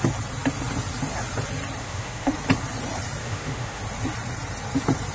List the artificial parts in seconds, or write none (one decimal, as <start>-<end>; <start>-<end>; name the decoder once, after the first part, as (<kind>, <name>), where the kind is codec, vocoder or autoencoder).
1.8-2.3 (autoencoder, DAC-VAE); 3.2-3.8